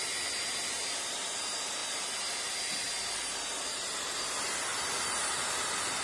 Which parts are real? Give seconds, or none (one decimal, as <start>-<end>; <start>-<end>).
0.0-6.0